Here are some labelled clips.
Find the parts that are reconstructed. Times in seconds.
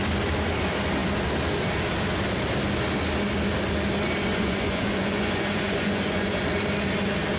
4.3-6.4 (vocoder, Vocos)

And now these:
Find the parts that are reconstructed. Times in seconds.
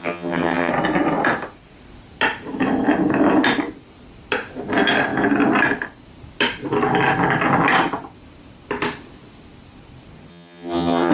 0.0-0.7 (vocoder, HiFi-GAN); 10.3-11.1